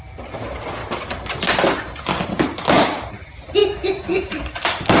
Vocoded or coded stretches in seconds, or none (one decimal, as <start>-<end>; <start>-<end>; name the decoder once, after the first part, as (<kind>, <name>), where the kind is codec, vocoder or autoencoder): 3.6-4.3 (vocoder, Vocos)

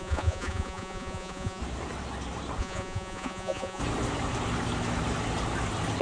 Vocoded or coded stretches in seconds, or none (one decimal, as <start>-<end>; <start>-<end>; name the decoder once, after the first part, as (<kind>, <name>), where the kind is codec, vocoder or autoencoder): 0.0-1.6 (vocoder, Vocos); 2.6-3.8